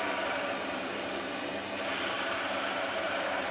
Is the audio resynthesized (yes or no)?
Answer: yes